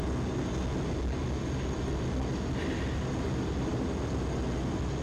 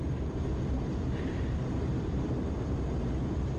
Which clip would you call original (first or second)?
first